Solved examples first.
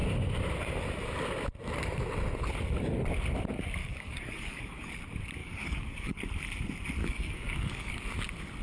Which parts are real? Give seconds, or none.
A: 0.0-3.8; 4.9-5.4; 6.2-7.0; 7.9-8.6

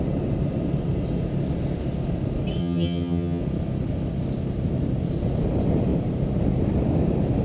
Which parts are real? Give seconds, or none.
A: 0.0-2.6; 3.4-7.4